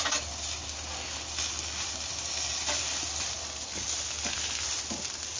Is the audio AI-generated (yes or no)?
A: no